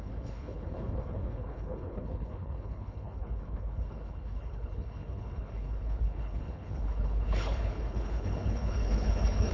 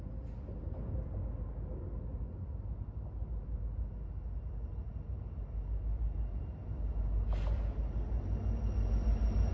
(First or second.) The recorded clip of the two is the second